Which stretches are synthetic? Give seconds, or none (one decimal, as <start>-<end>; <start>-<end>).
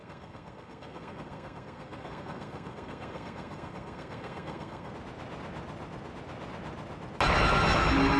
0.0-4.9